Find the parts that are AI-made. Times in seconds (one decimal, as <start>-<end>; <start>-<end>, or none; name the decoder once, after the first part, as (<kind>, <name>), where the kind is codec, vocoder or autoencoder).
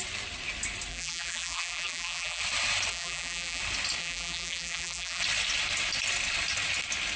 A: 0.9-2.4 (vocoder, BigVGAN v2); 2.9-3.6; 4.0-5.2